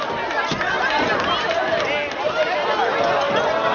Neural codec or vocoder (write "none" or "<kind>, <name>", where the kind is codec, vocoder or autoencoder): none